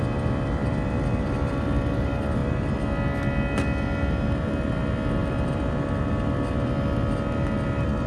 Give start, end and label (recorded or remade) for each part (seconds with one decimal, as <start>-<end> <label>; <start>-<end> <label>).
0.0-5.2 recorded; 5.2-6.1 remade; 6.1-8.1 recorded